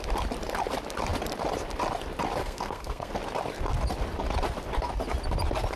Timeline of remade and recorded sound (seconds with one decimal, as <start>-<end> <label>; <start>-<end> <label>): 0.0-2.4 recorded; 2.4-3.1 remade; 3.1-5.8 recorded